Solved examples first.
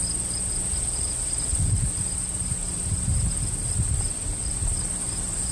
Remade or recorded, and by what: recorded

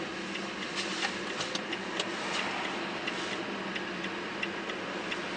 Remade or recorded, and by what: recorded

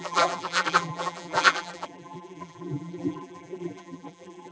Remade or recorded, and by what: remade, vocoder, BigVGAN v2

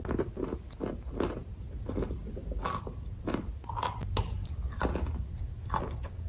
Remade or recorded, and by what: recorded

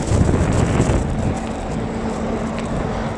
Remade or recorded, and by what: recorded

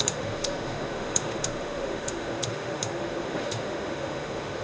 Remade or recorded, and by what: remade, autoencoder, DAC-VAE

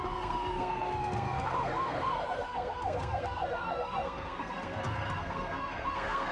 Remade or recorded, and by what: remade, codec, SNAC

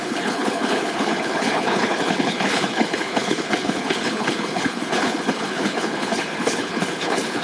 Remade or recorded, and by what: remade, codec, HILCodec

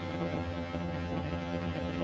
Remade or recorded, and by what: remade, vocoder, HiFi-GAN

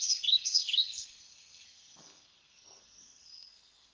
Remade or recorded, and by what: remade, codec, SNAC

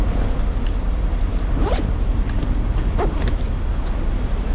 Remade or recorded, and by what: remade, vocoder, BigVGAN v2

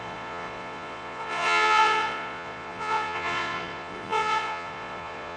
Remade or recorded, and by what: remade, vocoder, Vocos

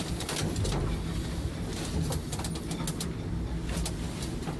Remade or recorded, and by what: recorded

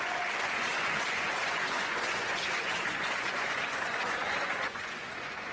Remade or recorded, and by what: remade, vocoder, Vocos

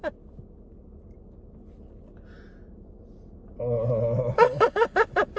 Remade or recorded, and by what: recorded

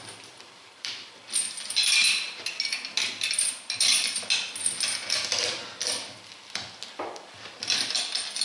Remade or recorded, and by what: recorded